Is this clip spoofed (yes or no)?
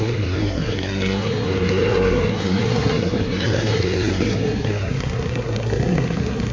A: yes